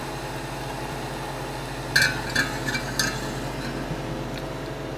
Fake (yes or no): no